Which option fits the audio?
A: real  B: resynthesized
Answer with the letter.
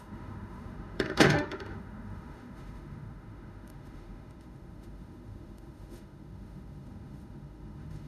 B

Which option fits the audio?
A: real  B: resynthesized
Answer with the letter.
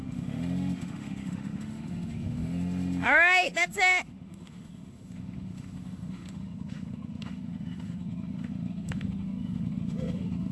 B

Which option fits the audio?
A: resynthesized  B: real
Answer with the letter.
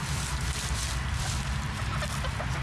B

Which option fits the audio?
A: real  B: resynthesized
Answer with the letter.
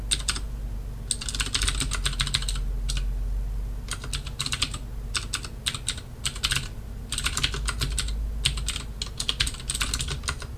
A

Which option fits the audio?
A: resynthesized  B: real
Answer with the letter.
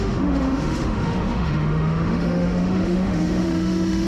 A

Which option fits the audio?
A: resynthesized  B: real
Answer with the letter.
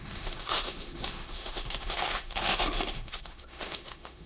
A